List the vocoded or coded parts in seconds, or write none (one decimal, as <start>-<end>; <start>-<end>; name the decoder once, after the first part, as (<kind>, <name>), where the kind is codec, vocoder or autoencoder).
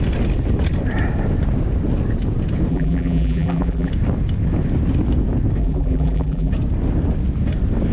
2.7-3.9 (vocoder, BigVGAN v2); 5.6-6.5